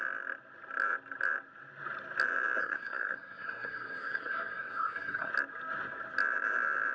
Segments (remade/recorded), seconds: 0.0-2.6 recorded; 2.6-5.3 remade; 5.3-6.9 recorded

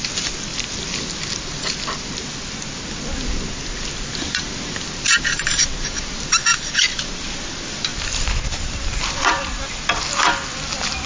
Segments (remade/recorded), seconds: 0.0-11.1 recorded

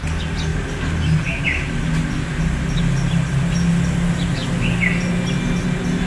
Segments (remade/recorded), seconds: 0.0-6.1 recorded

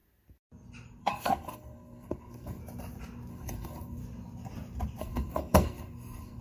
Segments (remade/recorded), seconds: 0.0-1.0 recorded; 1.0-2.6 remade; 2.6-3.3 recorded; 3.3-4.0 remade; 4.0-5.0 recorded; 5.0-6.4 remade

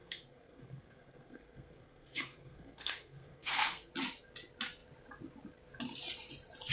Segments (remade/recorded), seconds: 0.0-3.9 remade; 3.9-6.7 recorded